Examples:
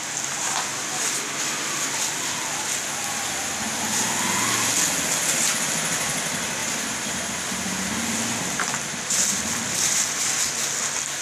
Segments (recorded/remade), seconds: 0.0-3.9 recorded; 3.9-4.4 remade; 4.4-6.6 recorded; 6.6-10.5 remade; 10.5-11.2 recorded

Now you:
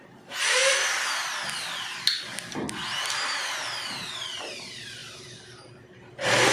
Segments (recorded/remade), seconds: 0.0-5.0 recorded; 5.0-5.8 remade; 5.8-6.5 recorded

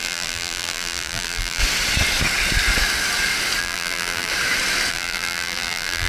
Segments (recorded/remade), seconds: 0.0-1.6 remade; 1.6-3.6 recorded; 3.6-4.3 remade; 4.3-4.9 recorded; 4.9-6.1 remade

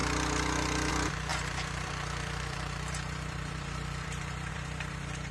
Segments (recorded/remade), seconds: 0.0-0.9 recorded; 0.9-5.3 remade

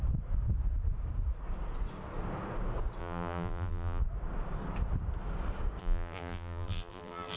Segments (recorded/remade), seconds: 0.0-3.0 recorded; 3.0-4.0 remade; 4.0-5.8 recorded; 5.8-7.4 remade